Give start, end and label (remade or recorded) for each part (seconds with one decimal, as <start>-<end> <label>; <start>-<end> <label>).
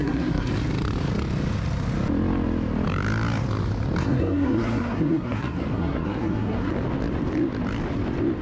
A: 0.0-0.5 remade; 0.5-4.0 recorded; 4.0-6.7 remade; 6.7-8.4 recorded